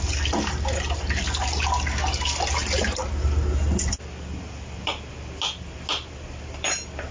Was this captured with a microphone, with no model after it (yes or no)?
yes